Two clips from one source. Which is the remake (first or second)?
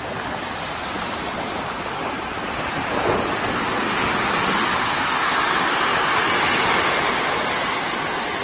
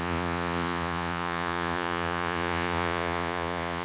second